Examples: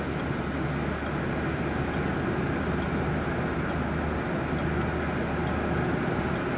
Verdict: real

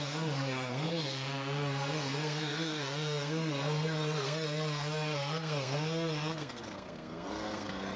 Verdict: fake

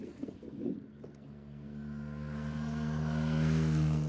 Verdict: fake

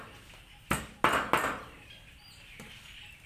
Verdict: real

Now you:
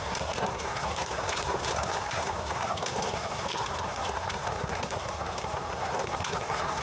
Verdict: fake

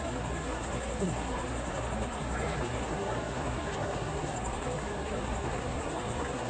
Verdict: fake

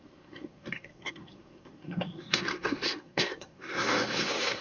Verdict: fake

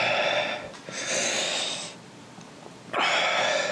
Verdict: real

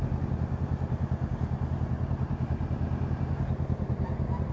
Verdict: real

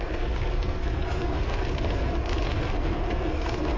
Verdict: fake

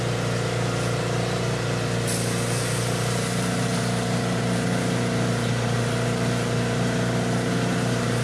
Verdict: real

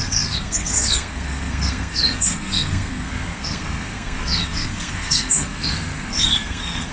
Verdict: fake